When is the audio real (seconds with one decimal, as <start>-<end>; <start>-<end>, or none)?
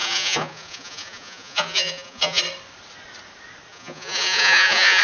2.4-3.7